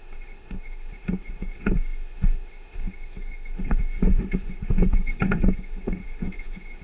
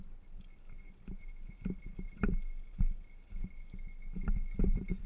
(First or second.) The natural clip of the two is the second